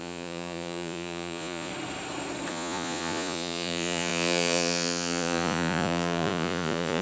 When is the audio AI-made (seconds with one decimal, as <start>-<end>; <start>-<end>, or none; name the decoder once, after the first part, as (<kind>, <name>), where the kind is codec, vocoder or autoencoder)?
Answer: 0.0-1.7 (vocoder, Vocos); 2.5-7.0